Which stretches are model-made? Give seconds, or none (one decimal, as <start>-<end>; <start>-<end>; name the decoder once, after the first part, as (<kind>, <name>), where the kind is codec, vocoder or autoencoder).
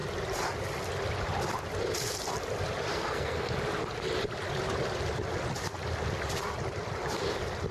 2.9-3.5 (codec, SNAC)